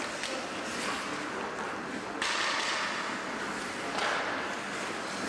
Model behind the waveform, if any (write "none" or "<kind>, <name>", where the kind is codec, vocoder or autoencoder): none